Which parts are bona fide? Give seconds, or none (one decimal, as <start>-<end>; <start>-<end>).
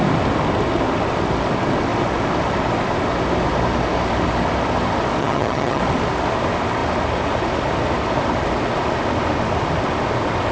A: 0.0-5.2; 5.8-10.5